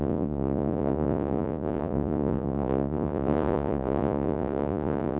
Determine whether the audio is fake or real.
fake